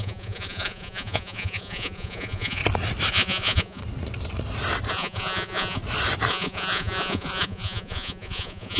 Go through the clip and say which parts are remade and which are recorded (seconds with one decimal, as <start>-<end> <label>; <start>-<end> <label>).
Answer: 0.0-2.6 remade; 2.6-3.1 recorded; 3.1-3.8 remade; 3.8-4.9 recorded; 4.9-5.8 remade; 5.8-6.3 recorded; 6.3-8.8 remade